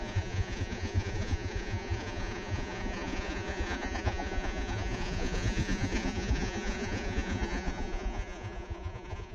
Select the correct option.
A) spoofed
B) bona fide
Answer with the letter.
A